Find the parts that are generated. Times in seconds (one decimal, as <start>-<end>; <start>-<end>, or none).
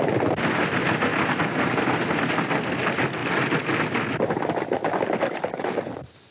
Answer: none